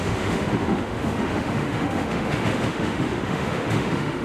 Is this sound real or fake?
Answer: fake